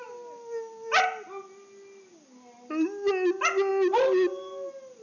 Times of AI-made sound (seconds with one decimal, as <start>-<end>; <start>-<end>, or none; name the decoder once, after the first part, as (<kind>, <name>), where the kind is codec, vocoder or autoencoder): none